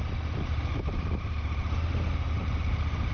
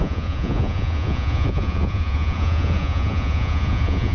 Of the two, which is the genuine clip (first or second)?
first